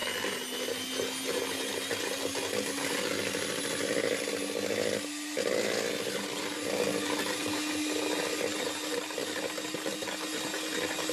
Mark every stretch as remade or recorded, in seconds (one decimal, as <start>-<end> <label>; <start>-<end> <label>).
0.0-11.1 recorded